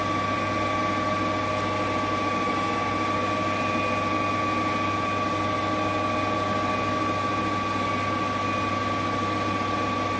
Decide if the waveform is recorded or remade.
recorded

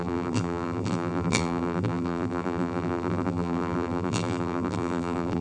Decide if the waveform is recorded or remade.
remade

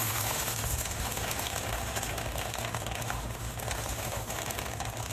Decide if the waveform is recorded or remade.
remade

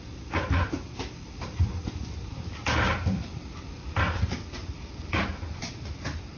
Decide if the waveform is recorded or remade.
recorded